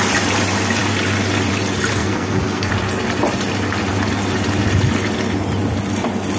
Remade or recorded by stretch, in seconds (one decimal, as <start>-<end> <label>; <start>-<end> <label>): 0.0-1.9 recorded; 1.9-2.7 remade; 2.7-6.4 recorded